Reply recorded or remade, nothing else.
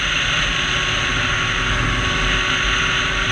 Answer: recorded